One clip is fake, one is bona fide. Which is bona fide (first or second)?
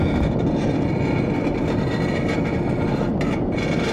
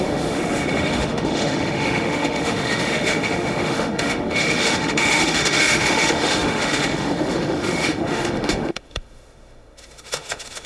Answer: first